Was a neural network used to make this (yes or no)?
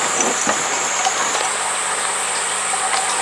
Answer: no